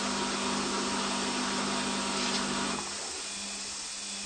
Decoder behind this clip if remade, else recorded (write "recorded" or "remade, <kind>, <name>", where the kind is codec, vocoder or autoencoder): recorded